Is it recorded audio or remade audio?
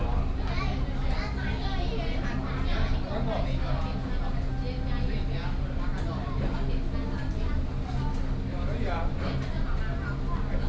recorded